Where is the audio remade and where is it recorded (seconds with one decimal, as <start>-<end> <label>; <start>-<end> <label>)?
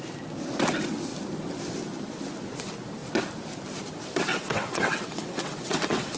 0.0-4.3 recorded; 4.3-6.2 remade